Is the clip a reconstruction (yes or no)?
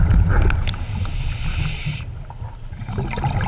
no